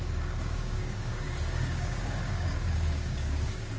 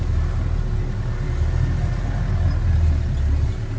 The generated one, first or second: first